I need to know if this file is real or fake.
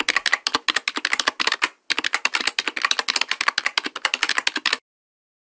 real